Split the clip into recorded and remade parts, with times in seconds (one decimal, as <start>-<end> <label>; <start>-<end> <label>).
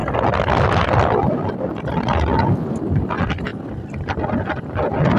0.0-5.2 recorded